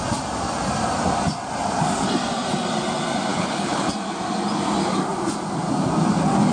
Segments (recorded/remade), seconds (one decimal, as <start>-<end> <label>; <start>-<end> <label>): 0.0-3.3 recorded; 3.3-3.9 remade; 3.9-6.5 recorded